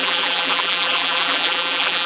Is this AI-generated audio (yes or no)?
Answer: yes